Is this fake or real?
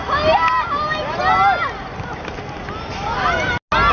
real